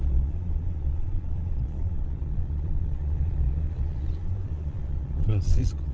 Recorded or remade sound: remade